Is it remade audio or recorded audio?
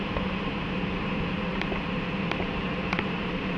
remade